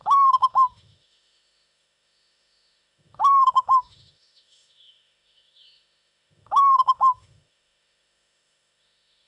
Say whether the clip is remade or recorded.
remade